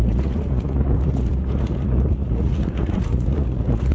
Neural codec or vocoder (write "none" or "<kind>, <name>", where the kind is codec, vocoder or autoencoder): vocoder, Vocos